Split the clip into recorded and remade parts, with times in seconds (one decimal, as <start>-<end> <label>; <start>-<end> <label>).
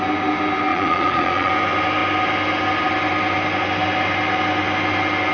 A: 0.0-0.7 recorded; 0.7-1.5 remade; 1.5-5.3 recorded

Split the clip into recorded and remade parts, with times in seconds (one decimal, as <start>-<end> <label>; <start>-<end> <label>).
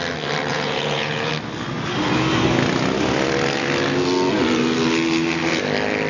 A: 0.0-0.5 recorded; 0.5-1.3 remade; 1.3-6.1 recorded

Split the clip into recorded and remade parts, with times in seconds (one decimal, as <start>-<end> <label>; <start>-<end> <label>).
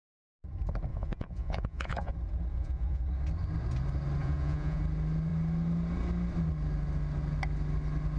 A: 0.0-0.9 recorded; 0.9-2.1 remade; 2.1-2.5 recorded; 2.5-3.0 remade; 3.0-4.2 recorded; 4.2-4.8 remade; 4.8-8.2 recorded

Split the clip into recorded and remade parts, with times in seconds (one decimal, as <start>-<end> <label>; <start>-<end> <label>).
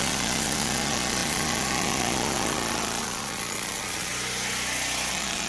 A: 0.0-4.1 remade; 4.1-5.1 recorded; 5.1-5.5 remade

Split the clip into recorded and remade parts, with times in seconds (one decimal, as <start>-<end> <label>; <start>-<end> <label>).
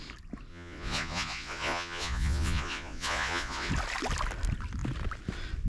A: 0.0-0.5 recorded; 0.5-3.7 remade; 3.7-5.7 recorded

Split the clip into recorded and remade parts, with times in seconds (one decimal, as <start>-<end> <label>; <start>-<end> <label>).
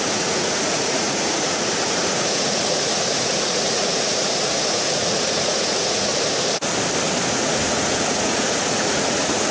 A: 0.0-6.1 remade; 6.1-7.3 recorded; 7.3-9.5 remade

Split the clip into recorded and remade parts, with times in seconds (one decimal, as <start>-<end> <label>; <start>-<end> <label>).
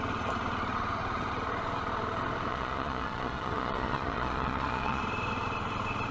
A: 0.0-2.5 recorded; 2.5-5.0 remade; 5.0-6.1 recorded